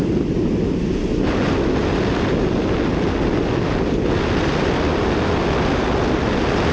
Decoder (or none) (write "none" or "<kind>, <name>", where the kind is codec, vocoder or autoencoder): none